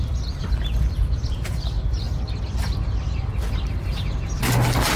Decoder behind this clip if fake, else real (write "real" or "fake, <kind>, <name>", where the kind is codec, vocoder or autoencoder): real